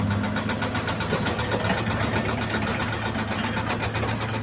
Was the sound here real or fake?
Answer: real